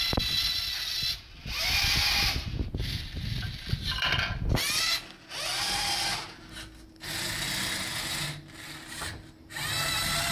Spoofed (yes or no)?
no